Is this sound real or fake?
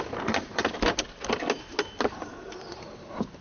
real